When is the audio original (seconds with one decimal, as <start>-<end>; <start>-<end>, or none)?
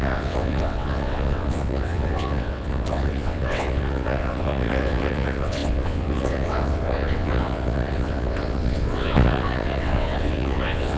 none